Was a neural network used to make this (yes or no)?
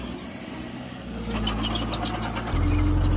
no